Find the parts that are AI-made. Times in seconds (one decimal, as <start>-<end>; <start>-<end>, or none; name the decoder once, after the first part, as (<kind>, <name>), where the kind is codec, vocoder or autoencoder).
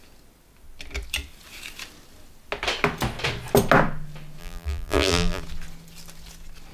4.4-5.4 (vocoder, BigVGAN v2)